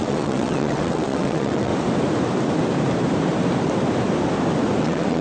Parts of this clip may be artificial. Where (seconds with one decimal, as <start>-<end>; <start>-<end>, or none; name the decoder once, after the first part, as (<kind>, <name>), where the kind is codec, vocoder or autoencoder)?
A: 0.0-1.7 (vocoder, WaveNeXt); 4.8-5.2